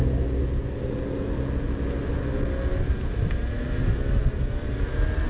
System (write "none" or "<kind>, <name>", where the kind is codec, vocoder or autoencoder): none